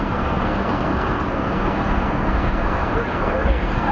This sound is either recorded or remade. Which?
remade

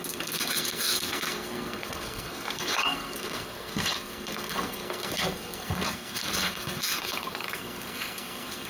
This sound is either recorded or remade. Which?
remade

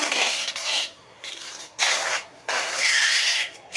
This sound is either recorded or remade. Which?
remade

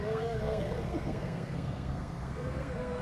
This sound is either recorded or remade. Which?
remade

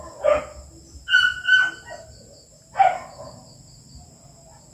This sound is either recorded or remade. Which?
recorded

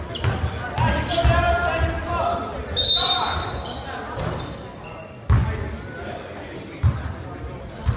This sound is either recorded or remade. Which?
recorded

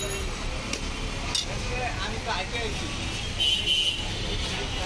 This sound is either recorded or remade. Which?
recorded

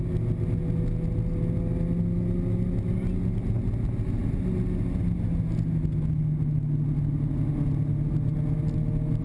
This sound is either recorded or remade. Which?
recorded